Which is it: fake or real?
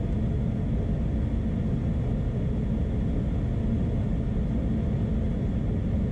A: real